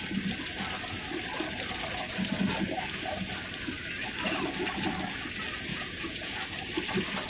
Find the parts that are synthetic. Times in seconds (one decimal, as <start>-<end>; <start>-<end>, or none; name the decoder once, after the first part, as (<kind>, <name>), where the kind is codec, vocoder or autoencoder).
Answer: 5.7-6.3 (vocoder, Vocos)